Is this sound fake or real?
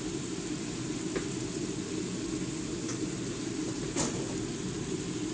real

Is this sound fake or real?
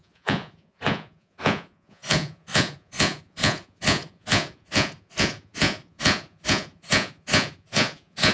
fake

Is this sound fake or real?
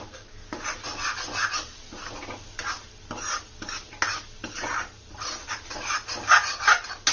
real